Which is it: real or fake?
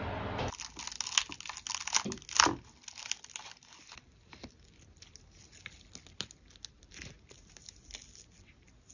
real